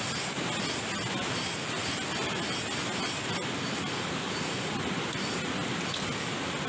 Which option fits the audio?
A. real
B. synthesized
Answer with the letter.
A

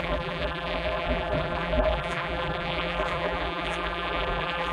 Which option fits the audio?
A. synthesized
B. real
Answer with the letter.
A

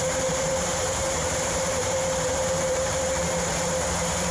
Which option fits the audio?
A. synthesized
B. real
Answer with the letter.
A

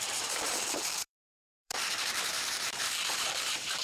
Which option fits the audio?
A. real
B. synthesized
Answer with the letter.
B